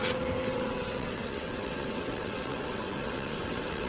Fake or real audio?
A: fake